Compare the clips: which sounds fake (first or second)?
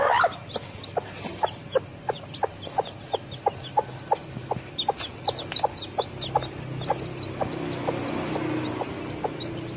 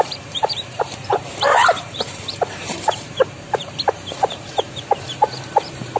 second